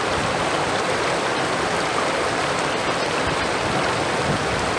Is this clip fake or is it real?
fake